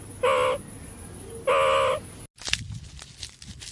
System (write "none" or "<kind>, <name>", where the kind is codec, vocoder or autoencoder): none